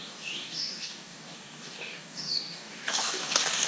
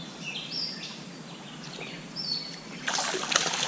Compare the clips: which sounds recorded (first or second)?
second